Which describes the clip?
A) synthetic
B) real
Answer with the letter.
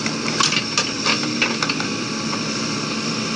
A